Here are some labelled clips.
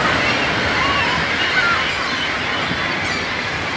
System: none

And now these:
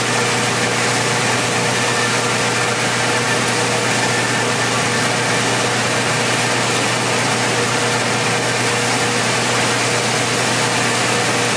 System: none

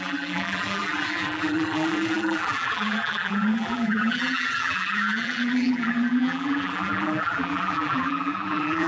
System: vocoder, BigVGAN v2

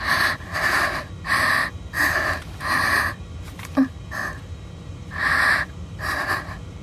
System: vocoder, BigVGAN v2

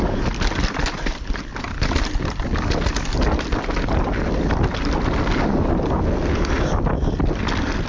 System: none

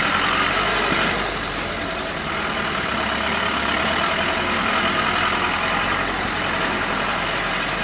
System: none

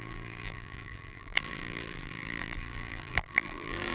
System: vocoder, BigVGAN v2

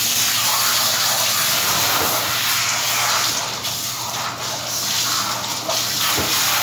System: none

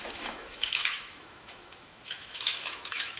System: autoencoder, DAC-VAE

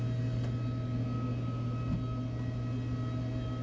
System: none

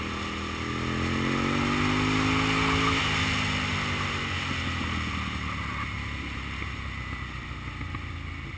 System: none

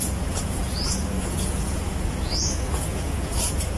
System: vocoder, Vocos